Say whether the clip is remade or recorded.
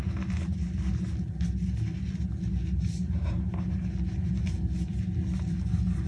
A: recorded